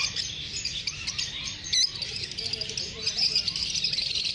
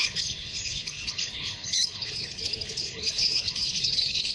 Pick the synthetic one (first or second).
second